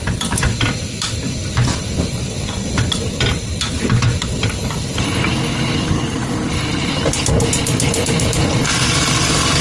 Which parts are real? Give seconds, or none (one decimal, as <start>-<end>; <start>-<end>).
6.7-8.0